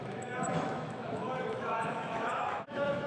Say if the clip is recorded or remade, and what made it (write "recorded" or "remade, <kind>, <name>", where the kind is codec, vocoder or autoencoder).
remade, autoencoder, DAC-VAE